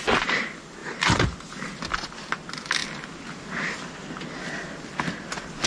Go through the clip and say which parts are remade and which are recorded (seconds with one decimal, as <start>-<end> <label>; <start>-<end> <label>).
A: 0.0-0.8 recorded; 0.8-1.8 remade; 1.8-5.7 recorded